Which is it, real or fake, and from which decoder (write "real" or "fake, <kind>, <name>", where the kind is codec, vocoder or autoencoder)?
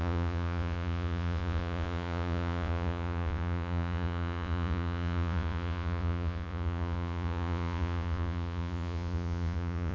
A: fake, vocoder, Vocos